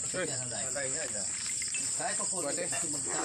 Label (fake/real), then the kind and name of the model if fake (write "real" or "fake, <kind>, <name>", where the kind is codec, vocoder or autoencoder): fake, vocoder, BigVGAN v2